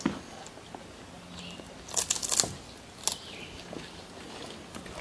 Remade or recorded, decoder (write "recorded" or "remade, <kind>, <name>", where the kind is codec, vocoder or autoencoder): recorded